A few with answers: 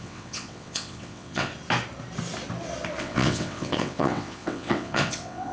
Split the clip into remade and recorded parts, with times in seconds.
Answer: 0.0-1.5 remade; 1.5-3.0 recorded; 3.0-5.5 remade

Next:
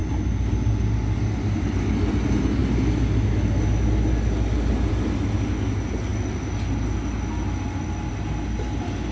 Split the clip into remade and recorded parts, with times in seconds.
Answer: 0.0-9.1 recorded

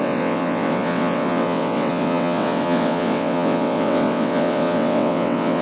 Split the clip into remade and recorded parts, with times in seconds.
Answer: 0.0-5.6 remade

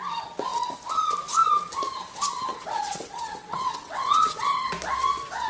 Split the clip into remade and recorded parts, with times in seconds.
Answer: 0.0-2.5 recorded; 2.5-4.7 remade; 4.7-5.5 recorded

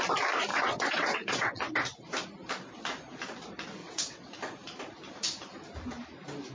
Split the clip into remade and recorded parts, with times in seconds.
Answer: 0.0-0.5 recorded; 0.5-1.7 remade; 1.7-3.8 recorded; 3.8-4.3 remade; 4.3-6.5 recorded